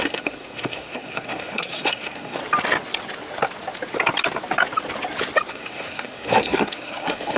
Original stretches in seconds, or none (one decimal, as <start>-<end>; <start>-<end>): 2.4-5.5